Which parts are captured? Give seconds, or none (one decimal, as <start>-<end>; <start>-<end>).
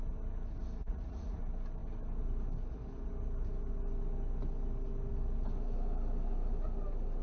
0.0-0.8; 1.4-7.2